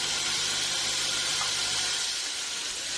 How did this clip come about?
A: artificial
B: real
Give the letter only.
B